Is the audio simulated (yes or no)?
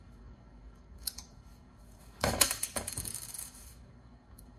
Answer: yes